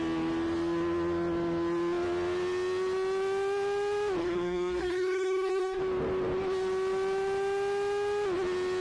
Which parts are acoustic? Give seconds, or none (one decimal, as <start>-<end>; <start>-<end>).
0.0-4.2; 5.8-8.8